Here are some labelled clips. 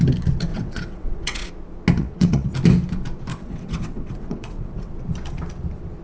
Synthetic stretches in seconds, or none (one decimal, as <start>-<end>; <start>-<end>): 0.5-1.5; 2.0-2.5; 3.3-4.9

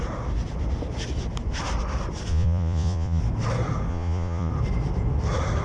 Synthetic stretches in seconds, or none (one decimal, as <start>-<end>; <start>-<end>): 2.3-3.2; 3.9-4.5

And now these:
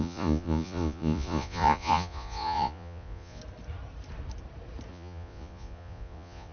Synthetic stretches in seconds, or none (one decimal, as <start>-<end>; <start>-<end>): 0.0-3.4; 4.9-6.5

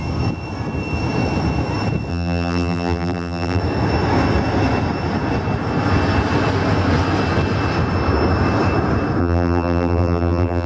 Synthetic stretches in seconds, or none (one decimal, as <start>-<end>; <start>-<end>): 2.1-3.6; 9.2-10.7